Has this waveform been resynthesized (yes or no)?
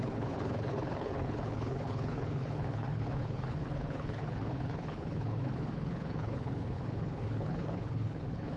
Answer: yes